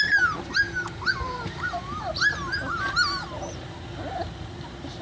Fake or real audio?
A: real